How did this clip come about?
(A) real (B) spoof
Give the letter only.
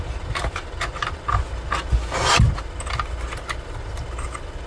A